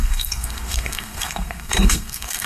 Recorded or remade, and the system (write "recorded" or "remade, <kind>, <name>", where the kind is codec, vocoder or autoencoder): remade, codec, SNAC